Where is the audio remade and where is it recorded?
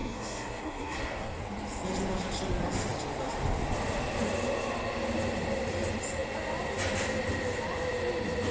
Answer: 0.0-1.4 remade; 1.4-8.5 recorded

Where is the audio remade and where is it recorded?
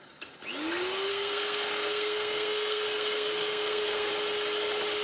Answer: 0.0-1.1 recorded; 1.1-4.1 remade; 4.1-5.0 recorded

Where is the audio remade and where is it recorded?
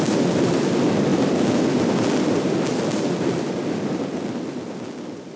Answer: 0.0-5.4 recorded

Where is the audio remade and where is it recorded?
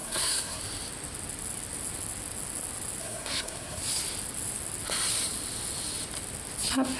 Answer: 0.0-0.6 remade; 0.6-3.0 recorded; 3.0-3.8 remade; 3.8-7.0 recorded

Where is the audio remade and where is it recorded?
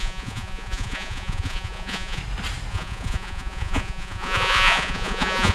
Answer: 0.0-2.2 remade; 2.2-2.7 recorded; 2.7-5.5 remade